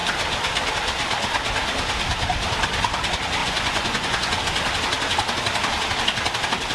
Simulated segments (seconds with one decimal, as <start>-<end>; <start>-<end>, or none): 3.4-4.4